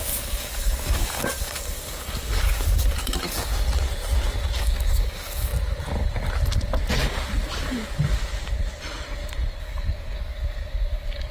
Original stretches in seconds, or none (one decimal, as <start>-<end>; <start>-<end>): 3.5-4.6; 5.5-9.6